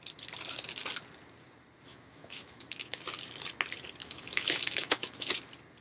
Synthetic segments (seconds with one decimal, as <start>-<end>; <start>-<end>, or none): 1.9-3.0; 4.0-5.3